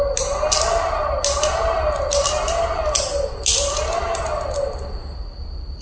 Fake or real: real